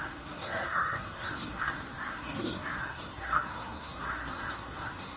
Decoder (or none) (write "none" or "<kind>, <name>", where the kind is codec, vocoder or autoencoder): codec, SNAC